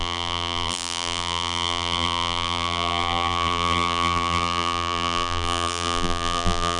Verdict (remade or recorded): remade